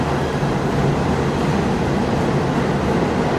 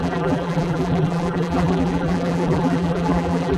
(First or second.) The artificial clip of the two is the second